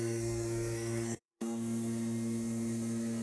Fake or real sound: fake